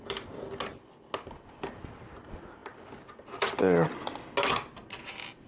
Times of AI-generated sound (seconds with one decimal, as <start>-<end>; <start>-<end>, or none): none